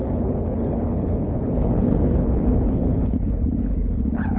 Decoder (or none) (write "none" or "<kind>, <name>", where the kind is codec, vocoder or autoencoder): codec, HILCodec